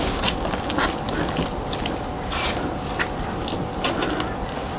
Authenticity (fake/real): real